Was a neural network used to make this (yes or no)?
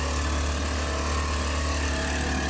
no